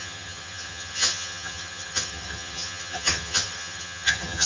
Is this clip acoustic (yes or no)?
no